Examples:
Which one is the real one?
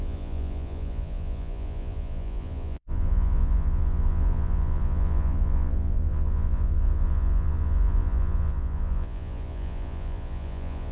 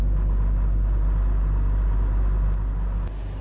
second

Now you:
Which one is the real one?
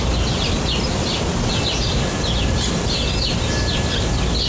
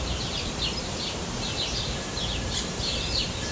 first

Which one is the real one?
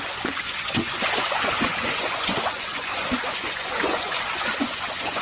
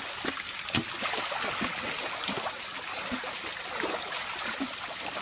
second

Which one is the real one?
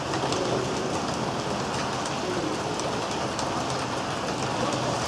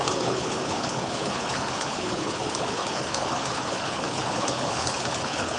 first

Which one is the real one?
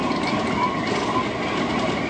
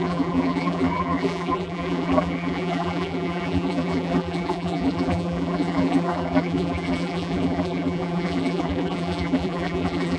first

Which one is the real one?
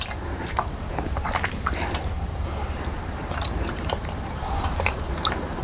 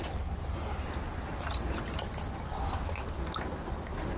second